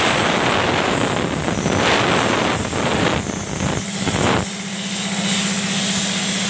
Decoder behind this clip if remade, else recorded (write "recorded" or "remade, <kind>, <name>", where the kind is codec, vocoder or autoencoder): recorded